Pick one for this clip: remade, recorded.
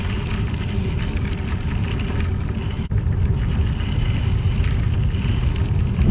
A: recorded